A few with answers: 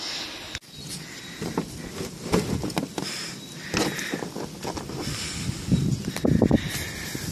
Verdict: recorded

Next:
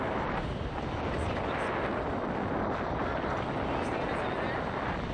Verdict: recorded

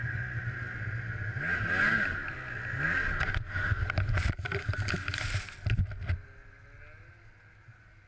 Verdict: recorded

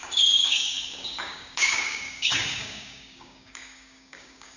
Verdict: remade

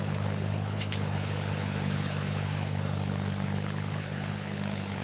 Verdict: remade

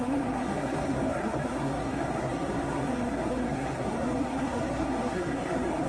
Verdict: remade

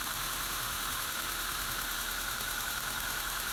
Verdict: remade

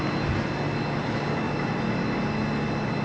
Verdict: recorded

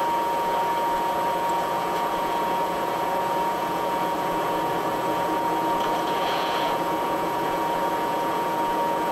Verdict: remade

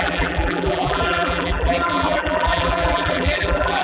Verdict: remade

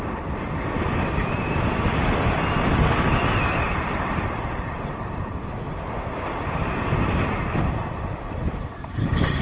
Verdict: remade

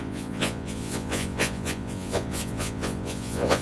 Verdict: remade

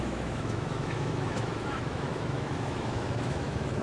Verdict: remade